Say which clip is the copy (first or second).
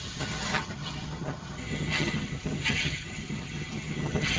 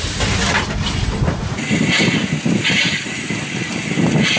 first